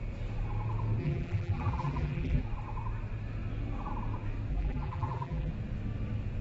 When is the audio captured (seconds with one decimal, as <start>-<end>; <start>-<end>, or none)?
0.0-1.0; 2.4-4.5; 5.5-6.4